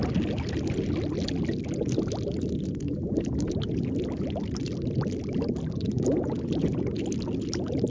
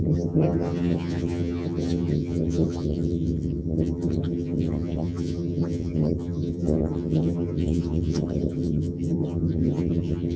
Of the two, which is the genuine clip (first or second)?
first